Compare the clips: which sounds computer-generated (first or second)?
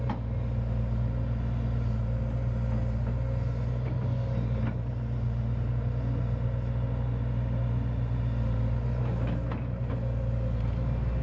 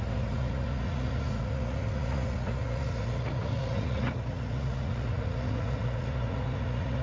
second